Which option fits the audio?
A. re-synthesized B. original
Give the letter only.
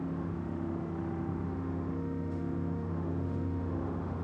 A